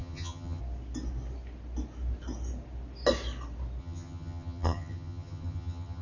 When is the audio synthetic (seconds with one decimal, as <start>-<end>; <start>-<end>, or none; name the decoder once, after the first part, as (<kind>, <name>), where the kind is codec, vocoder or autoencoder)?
0.0-0.6 (vocoder, HiFi-GAN); 3.8-6.0